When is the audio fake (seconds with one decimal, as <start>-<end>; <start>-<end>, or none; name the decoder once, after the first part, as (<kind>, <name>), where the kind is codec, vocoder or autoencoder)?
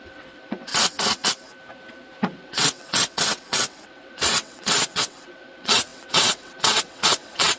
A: 0.0-0.7 (vocoder, WaveNeXt); 2.2-7.6